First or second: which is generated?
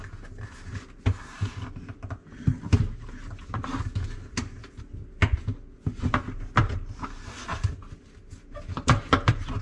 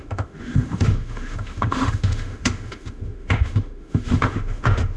second